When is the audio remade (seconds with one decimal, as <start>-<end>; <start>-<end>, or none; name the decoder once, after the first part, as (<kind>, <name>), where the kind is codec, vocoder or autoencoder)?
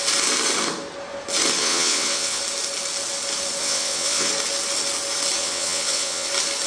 1.6-2.4 (vocoder, WaveNeXt); 3.6-4.3; 5.4-6.3